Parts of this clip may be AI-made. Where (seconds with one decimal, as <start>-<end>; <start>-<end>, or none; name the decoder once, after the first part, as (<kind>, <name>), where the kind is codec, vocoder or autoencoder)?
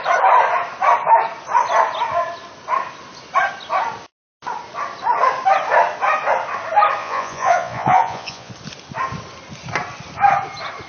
7.0-8.5 (vocoder, Vocos)